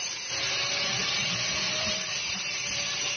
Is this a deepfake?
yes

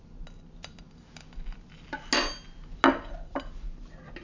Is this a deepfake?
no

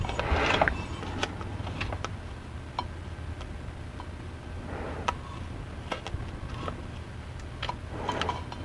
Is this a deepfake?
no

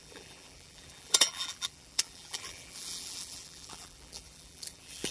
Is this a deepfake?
yes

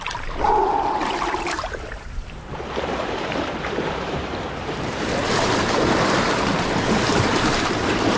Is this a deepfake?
yes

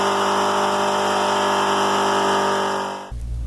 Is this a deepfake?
no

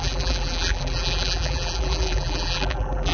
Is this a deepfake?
yes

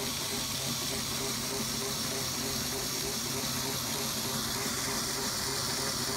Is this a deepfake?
yes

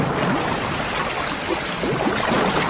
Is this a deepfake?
no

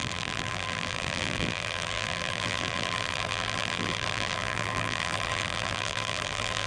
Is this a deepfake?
yes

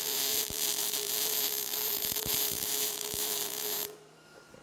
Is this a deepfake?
yes